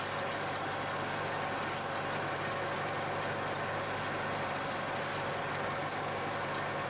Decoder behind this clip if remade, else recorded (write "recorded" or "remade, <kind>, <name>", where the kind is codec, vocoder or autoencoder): recorded